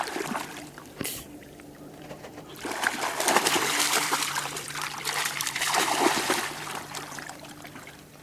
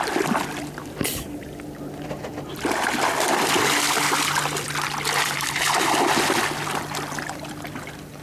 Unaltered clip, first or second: second